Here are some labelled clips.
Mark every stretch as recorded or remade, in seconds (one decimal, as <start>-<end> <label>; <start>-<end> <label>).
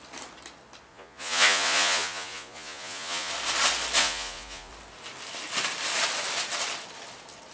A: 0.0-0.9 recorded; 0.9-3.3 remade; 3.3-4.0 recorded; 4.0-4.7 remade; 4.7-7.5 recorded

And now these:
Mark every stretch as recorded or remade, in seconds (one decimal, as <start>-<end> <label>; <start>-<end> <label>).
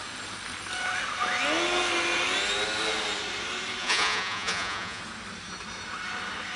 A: 0.0-3.8 recorded; 3.8-5.0 remade; 5.0-6.6 recorded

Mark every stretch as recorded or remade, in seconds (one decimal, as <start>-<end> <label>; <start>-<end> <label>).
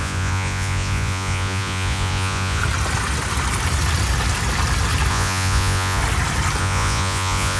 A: 0.0-2.6 remade; 2.6-5.1 recorded; 5.1-6.0 remade; 6.0-6.6 recorded; 6.6-7.6 remade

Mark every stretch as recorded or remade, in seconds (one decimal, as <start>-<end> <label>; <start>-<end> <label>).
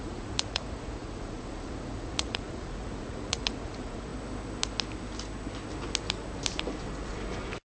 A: 0.0-4.1 remade; 4.1-7.6 recorded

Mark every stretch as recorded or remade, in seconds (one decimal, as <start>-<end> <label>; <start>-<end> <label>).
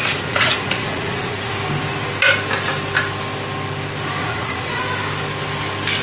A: 0.0-1.5 remade; 1.5-4.2 recorded; 4.2-4.8 remade; 4.8-6.0 recorded